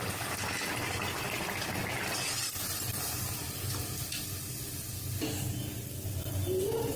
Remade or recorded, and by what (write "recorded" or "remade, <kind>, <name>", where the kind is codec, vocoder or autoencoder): recorded